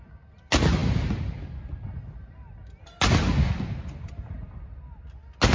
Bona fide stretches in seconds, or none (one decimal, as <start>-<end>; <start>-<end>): 0.0-5.5